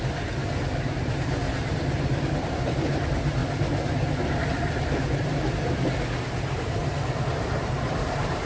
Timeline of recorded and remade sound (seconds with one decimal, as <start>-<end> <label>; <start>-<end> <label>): 0.0-0.4 recorded; 0.4-2.3 remade; 2.3-6.8 recorded; 6.8-8.5 remade